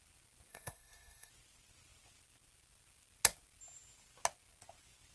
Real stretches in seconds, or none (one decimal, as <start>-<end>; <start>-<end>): 0.0-0.5; 1.3-5.1